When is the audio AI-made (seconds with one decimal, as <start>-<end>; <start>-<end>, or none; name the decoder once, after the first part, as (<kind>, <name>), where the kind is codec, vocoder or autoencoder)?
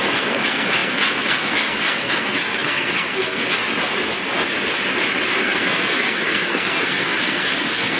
0.0-3.6 (codec, SNAC); 5.4-8.0